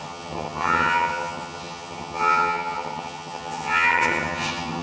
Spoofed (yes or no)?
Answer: yes